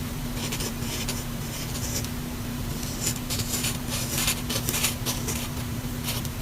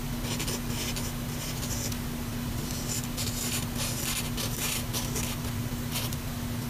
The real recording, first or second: second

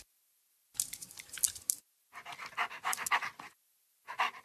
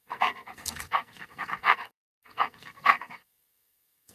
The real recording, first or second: first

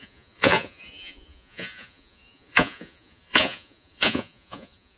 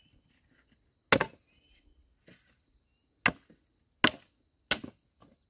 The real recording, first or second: second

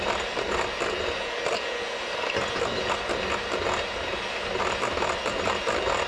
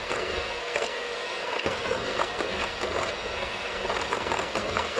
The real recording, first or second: first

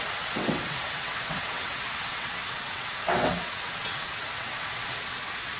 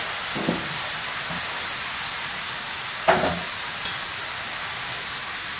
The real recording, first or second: second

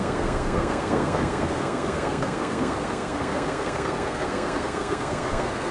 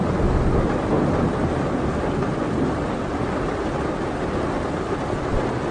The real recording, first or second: second